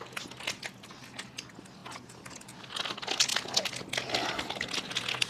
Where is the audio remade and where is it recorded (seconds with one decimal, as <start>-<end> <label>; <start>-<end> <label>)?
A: 0.0-5.3 recorded